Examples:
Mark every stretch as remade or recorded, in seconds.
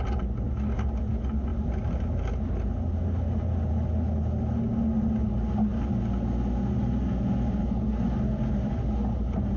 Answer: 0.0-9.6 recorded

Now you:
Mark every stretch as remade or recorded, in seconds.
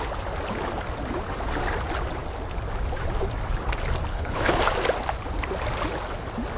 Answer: 0.0-4.1 recorded; 4.1-4.6 remade; 4.6-6.6 recorded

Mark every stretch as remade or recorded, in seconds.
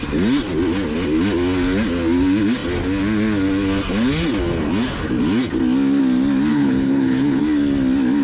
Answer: 0.0-6.5 recorded; 6.5-7.4 remade; 7.4-8.2 recorded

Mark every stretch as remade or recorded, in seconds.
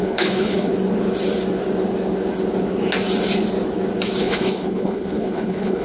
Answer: 0.0-0.7 remade; 0.7-4.2 recorded; 4.2-5.8 remade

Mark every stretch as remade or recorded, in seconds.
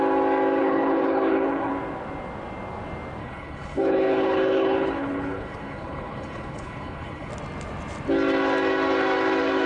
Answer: 0.0-0.6 recorded; 0.6-1.7 remade; 1.7-3.2 recorded; 3.2-7.3 remade; 7.3-9.7 recorded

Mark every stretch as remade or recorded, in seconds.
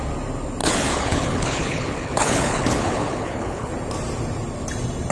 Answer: 0.0-0.6 recorded; 0.6-3.7 remade; 3.7-5.1 recorded